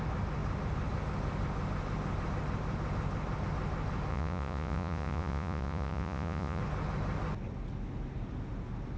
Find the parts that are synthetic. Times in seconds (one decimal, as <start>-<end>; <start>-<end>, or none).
4.1-6.6